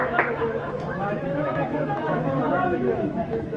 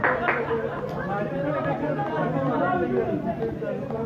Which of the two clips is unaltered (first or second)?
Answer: second